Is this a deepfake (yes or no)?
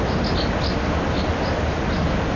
no